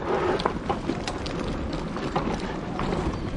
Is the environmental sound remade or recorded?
recorded